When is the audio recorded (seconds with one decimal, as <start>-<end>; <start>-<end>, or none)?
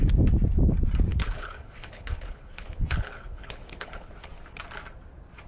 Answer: 0.0-1.1; 4.3-5.5